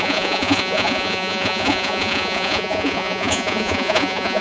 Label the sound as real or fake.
fake